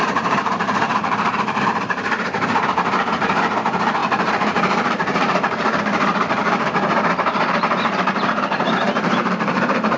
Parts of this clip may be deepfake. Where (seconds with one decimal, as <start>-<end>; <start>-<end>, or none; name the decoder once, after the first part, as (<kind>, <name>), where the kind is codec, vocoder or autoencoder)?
0.0-10.0 (vocoder, BigVGAN v2)